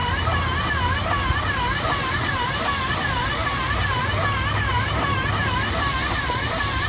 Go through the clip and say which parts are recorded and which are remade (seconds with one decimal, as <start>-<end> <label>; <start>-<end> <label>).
0.0-2.6 remade; 2.6-3.5 recorded; 3.5-4.2 remade; 4.2-4.7 recorded; 4.7-5.3 remade; 5.3-6.9 recorded